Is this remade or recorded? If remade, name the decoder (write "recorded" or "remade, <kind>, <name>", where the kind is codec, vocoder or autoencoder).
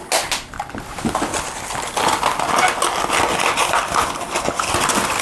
recorded